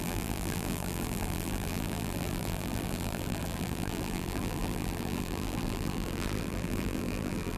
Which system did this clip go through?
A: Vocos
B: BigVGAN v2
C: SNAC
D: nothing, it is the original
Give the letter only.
B